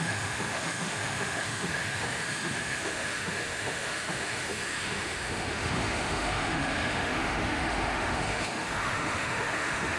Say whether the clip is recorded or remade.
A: remade